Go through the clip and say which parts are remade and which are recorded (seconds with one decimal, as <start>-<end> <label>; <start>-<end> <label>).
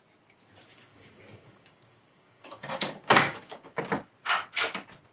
0.0-0.7 recorded; 0.7-3.8 remade; 3.8-5.1 recorded